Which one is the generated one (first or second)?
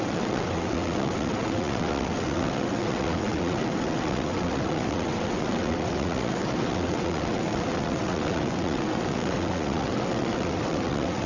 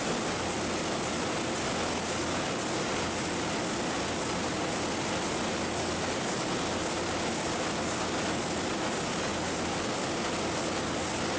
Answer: first